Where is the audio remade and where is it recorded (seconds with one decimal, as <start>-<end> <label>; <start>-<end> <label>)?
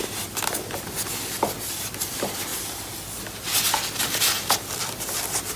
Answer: 0.0-5.6 recorded